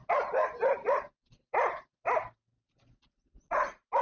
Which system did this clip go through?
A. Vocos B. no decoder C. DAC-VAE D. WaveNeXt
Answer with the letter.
B